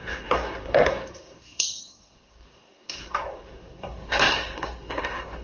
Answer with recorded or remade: remade